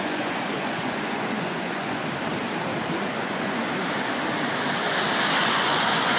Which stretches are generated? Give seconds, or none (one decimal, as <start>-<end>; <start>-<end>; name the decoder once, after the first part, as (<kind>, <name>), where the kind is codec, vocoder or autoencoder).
0.0-2.0 (vocoder, Vocos); 3.1-3.6; 5.4-6.2